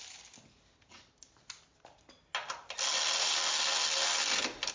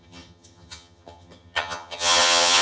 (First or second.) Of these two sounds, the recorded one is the first